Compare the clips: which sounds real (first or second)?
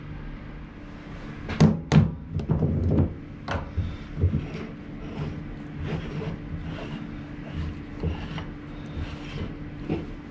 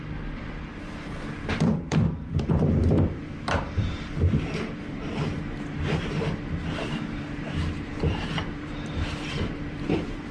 first